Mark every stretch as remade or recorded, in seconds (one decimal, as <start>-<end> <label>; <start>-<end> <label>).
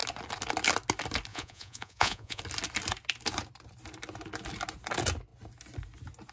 0.0-1.3 recorded; 1.3-2.4 remade; 2.4-6.3 recorded